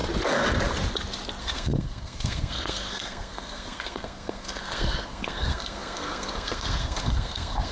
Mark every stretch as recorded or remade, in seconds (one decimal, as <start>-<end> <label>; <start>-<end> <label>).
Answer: 0.0-1.4 recorded; 1.4-7.7 remade